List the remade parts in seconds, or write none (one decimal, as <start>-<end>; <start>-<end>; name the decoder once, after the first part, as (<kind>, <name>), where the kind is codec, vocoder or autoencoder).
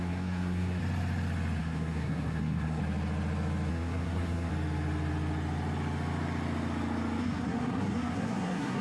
0.0-0.8 (codec, SNAC); 1.6-2.8; 3.7-4.5; 7.2-8.8